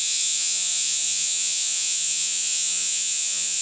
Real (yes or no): no